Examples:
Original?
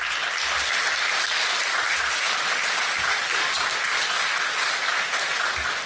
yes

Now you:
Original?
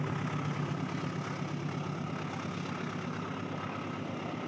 yes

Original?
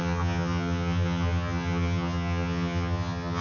no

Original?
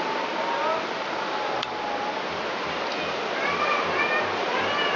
yes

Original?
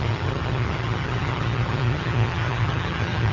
no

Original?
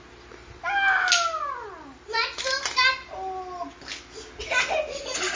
yes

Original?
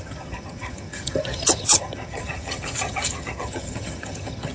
no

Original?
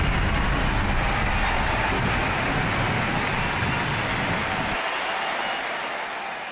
yes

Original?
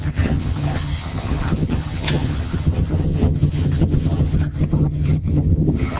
no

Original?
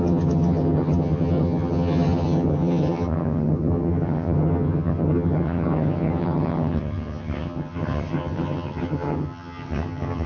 no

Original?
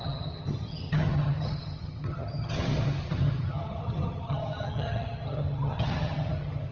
no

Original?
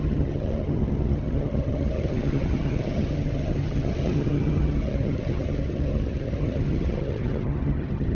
no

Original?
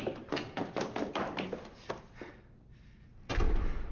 yes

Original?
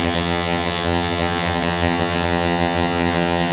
no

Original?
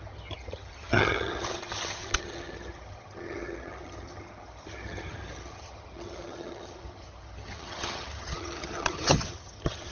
no